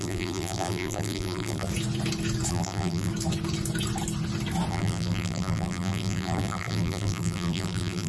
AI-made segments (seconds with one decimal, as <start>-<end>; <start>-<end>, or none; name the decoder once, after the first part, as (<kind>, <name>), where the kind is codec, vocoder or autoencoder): 0.0-1.7 (vocoder, BigVGAN v2); 2.5-3.1; 4.7-8.1